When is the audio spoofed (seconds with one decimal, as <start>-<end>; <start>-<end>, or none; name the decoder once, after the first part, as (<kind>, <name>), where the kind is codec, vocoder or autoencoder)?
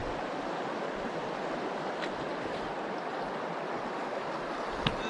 none